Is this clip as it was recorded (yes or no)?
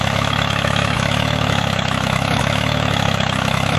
no